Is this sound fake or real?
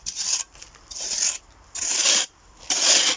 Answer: real